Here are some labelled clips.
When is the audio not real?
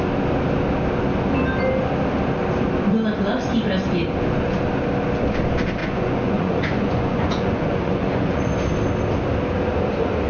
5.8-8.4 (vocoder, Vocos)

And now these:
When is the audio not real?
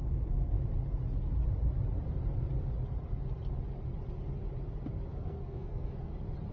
5.1-6.1 (codec, SNAC)